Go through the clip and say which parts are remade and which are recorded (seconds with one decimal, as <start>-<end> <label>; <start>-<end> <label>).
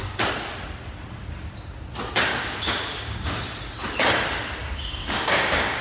0.0-2.3 recorded; 2.3-3.4 remade; 3.4-4.6 recorded; 4.6-5.8 remade